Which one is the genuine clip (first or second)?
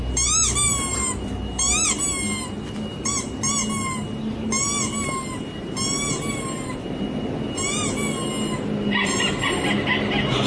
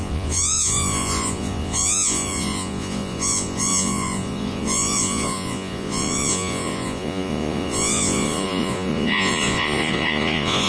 first